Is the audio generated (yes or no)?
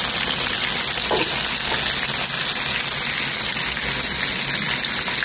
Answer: no